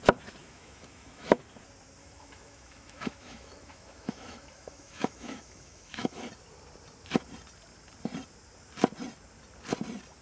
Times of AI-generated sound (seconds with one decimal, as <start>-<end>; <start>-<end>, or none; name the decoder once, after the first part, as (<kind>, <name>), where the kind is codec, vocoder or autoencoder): 0.4-1.4 (autoencoder, DAC-VAE); 2.0-6.3

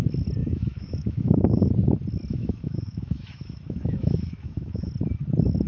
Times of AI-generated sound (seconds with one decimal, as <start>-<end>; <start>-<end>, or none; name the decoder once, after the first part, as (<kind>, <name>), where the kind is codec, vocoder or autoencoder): 0.4-1.7 (autoencoder, DAC-VAE); 2.3-4.9

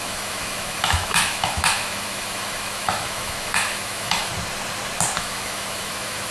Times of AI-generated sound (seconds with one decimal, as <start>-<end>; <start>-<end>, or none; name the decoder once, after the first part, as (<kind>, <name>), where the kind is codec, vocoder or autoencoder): 0.0-4.3 (autoencoder, DAC-VAE); 5.2-6.3

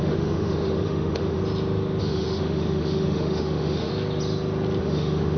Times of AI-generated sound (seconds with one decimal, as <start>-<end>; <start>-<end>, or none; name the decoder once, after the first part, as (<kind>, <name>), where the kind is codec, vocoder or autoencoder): 0.0-1.4 (autoencoder, DAC-VAE); 2.0-3.9; 4.8-5.4

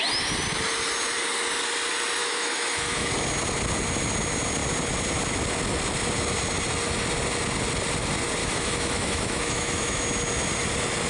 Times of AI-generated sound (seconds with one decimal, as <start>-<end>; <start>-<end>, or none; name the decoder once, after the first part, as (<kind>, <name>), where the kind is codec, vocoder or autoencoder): 2.2-3.1 (autoencoder, DAC-VAE); 8.4-10.0

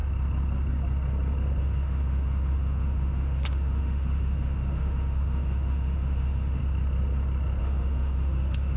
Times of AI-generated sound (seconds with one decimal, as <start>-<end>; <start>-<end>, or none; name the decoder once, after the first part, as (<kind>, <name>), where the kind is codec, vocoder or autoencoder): 1.6-6.6 (autoencoder, DAC-VAE); 7.6-8.8

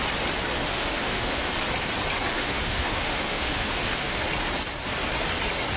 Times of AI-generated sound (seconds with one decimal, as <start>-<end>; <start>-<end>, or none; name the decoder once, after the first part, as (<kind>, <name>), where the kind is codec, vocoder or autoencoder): 0.6-1.5 (autoencoder, DAC-VAE); 2.3-4.2